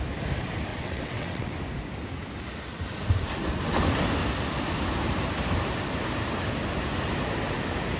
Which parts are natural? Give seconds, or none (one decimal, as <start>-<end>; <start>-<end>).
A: 0.0-0.7; 1.5-8.0